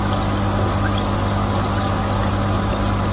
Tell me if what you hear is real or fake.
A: real